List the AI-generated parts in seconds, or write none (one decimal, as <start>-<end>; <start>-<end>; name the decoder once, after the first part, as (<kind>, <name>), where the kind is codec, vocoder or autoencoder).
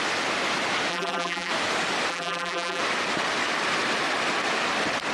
0.9-1.5 (vocoder, BigVGAN v2); 2.1-2.8